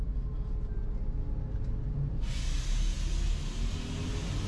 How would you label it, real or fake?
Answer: real